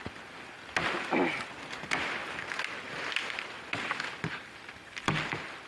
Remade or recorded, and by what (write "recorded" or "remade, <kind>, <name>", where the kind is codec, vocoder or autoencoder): recorded